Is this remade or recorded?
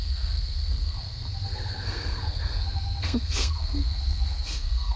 remade